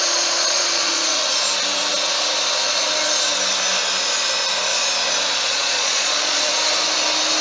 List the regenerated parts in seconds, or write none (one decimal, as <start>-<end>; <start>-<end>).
0.0-1.2; 5.3-6.5